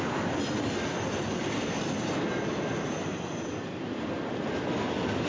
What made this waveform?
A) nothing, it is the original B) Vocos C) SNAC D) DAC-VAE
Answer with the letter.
A